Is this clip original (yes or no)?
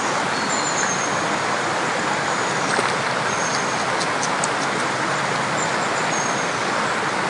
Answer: yes